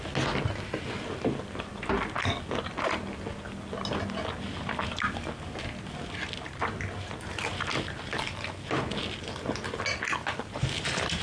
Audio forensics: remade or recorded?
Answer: recorded